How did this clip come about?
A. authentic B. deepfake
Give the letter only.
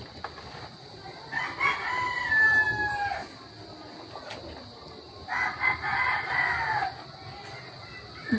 A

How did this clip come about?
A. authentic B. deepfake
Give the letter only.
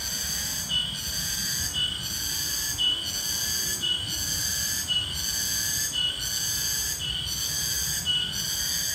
A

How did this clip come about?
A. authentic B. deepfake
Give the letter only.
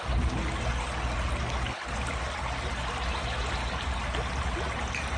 A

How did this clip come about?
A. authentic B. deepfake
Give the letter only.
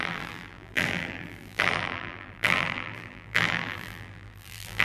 B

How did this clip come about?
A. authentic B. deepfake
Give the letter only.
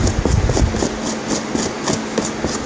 A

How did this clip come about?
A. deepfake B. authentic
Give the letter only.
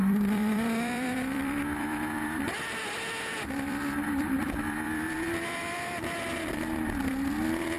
A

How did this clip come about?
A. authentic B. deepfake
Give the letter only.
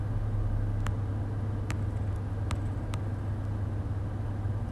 A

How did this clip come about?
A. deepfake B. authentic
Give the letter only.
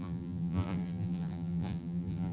A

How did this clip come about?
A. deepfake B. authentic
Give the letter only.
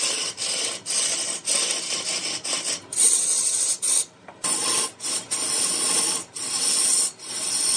A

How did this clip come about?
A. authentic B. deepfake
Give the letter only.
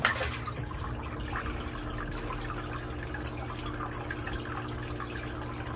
A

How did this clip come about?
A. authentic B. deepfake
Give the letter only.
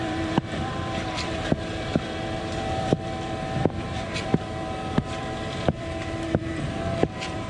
B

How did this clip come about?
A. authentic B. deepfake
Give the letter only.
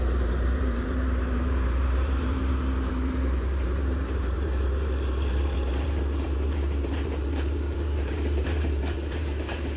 B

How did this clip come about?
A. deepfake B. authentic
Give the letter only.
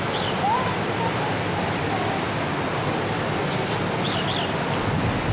B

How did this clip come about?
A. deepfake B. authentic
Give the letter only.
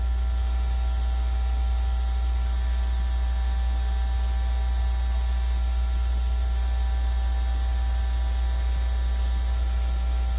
B